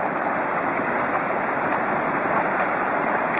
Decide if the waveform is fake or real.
real